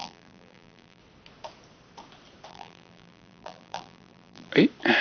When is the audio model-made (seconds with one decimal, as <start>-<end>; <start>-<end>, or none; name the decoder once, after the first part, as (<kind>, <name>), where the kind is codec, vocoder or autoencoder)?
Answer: 0.0-1.0 (vocoder, BigVGAN v2); 2.5-4.5